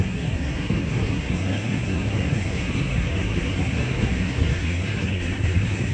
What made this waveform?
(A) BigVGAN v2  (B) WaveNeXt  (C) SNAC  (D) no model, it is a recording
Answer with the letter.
C